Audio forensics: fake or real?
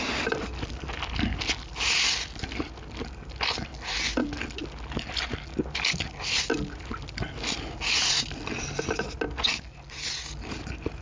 real